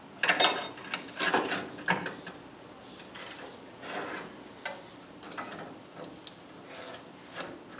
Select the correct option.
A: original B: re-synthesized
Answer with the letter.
A